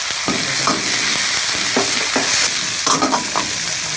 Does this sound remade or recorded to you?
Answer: recorded